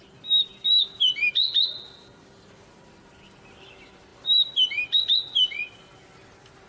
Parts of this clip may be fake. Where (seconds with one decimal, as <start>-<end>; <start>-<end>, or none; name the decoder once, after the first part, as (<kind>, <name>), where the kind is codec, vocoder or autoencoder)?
0.5-2.8 (vocoder, BigVGAN v2); 4.1-5.0